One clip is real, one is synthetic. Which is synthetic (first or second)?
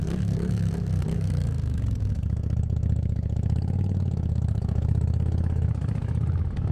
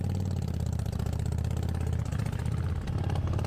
first